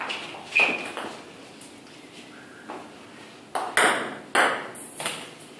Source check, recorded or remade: recorded